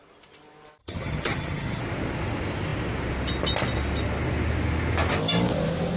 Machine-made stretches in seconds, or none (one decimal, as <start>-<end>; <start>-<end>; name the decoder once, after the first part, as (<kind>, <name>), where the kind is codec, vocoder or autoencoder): 0.8-1.8 (vocoder, HiFi-GAN)